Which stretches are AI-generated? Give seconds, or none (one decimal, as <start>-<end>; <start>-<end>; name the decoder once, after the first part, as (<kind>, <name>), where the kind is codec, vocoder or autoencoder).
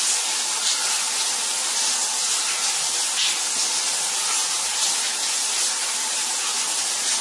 none